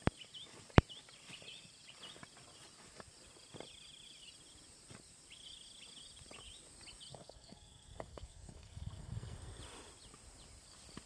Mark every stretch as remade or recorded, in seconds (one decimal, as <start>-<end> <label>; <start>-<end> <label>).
0.0-7.1 recorded; 7.1-9.6 remade; 9.6-11.1 recorded